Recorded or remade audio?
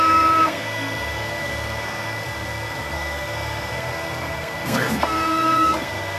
remade